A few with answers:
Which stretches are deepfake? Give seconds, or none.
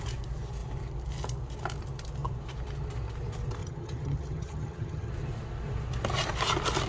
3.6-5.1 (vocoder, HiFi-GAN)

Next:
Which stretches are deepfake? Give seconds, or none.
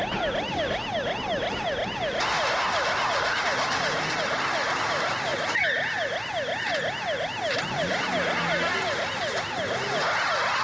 none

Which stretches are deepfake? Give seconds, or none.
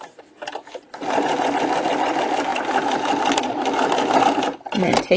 none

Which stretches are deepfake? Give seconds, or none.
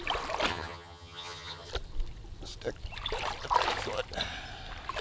0.5-1.7 (vocoder, HiFi-GAN)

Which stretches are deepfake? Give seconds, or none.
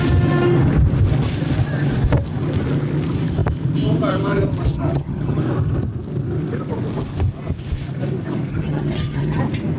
4.7-5.4 (vocoder, HiFi-GAN); 8.5-9.4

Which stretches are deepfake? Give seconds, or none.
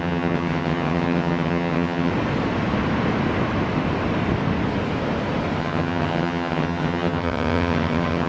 0.0-2.1 (vocoder, HiFi-GAN); 5.6-8.3